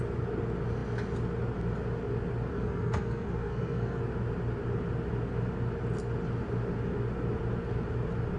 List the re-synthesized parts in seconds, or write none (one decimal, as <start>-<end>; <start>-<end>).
2.5-4.0